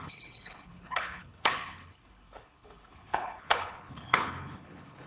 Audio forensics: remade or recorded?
remade